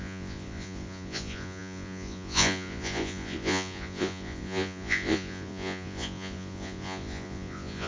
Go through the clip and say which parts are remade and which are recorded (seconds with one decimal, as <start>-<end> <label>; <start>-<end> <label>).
0.0-7.9 remade